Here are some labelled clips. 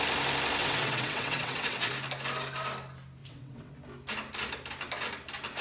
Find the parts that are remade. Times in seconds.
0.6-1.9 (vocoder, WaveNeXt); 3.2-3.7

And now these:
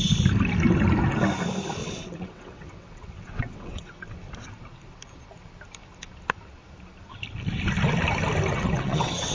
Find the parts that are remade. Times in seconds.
1.8-4.0 (vocoder, WaveNeXt); 8.5-9.3

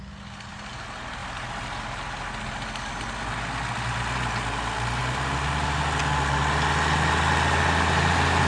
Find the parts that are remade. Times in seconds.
none

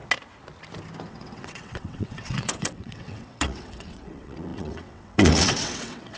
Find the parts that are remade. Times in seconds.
1.1-6.2 (vocoder, WaveNeXt)

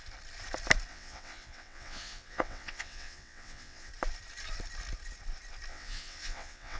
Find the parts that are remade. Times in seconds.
0.9-3.9 (vocoder, WaveNeXt); 5.7-6.8

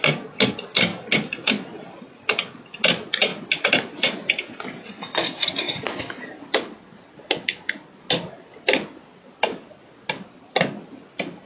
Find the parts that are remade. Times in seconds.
none

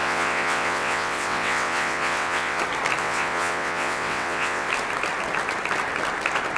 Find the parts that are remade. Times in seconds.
0.0-2.6 (vocoder, WaveNeXt); 3.0-4.7

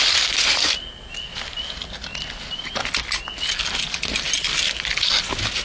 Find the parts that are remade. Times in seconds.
none